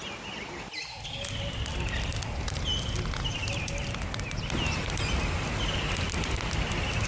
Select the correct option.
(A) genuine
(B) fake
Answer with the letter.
A